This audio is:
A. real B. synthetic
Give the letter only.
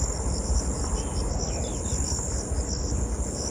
A